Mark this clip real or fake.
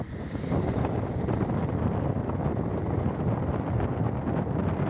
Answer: real